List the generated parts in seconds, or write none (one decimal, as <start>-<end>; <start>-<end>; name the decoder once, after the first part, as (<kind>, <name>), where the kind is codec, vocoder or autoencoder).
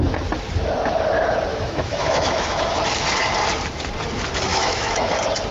1.5-2.8 (autoencoder, DAC-VAE); 4.5-5.1